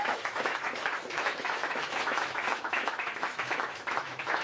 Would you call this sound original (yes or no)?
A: no